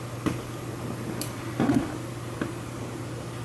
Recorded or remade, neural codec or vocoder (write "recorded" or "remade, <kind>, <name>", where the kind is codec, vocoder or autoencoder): recorded